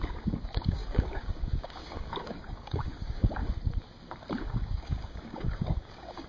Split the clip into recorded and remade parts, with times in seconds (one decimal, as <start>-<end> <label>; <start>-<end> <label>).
0.0-3.4 remade; 3.4-4.4 recorded; 4.4-6.3 remade